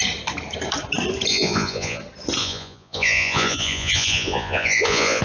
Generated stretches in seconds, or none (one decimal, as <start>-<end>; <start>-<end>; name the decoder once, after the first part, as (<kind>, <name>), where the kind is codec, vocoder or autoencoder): 1.3-2.0 (vocoder, Vocos); 2.4-5.2